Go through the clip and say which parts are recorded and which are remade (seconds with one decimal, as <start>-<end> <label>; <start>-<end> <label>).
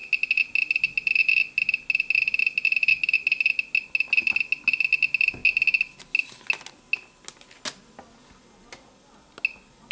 0.0-9.9 recorded